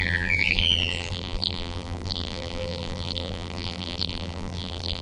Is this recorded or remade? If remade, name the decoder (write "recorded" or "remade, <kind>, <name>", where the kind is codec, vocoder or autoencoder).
remade, vocoder, BigVGAN v2